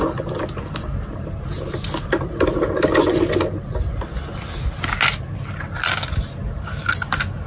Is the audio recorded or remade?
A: recorded